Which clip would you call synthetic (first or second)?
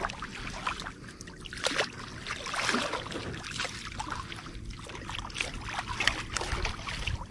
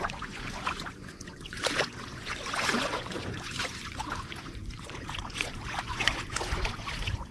second